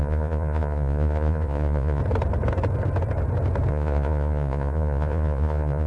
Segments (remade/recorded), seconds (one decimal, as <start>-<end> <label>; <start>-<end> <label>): 0.0-2.0 remade; 2.0-3.7 recorded; 3.7-5.9 remade